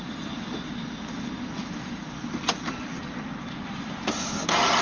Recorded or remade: recorded